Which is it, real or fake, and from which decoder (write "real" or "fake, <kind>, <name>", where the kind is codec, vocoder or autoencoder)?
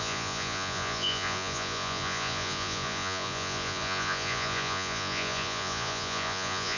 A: fake, vocoder, Vocos